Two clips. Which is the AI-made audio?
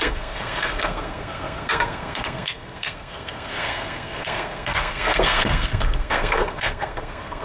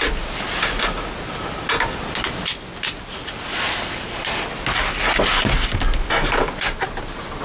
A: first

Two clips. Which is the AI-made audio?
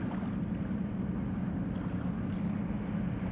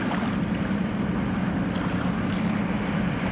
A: second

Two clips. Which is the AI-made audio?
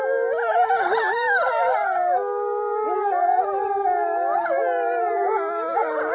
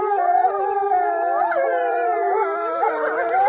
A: second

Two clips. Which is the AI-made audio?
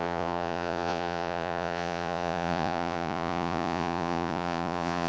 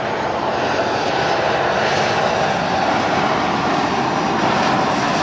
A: first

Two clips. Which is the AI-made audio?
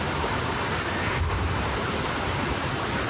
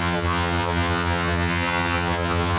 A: second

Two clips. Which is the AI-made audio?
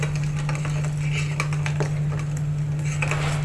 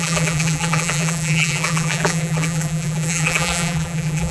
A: second